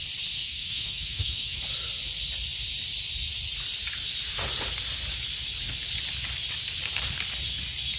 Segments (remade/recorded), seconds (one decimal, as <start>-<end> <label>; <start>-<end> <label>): 0.0-0.4 recorded; 0.4-1.6 remade; 1.6-8.0 recorded